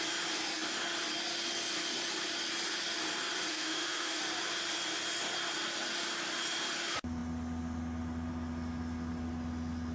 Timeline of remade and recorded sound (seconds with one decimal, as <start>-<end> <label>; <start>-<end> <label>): 0.0-3.5 recorded; 3.5-4.2 remade; 4.2-9.9 recorded